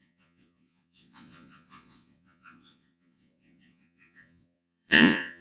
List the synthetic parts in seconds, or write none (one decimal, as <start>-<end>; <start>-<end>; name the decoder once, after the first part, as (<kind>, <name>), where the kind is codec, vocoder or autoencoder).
0.0-5.4 (vocoder, Vocos)